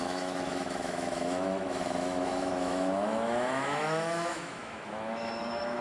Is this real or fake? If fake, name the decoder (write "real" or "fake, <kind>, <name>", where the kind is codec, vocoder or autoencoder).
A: fake, autoencoder, DAC-VAE